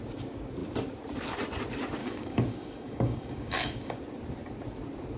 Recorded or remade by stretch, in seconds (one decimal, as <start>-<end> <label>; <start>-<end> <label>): 0.0-2.0 recorded; 2.0-4.0 remade; 4.0-5.2 recorded